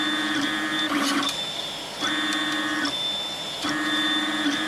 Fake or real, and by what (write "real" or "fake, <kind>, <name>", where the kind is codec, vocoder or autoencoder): real